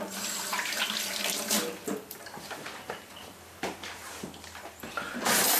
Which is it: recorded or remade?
remade